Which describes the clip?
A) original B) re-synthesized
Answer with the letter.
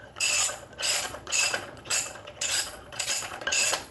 B